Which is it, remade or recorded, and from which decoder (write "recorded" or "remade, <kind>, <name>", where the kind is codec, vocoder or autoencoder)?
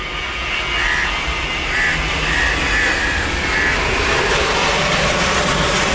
recorded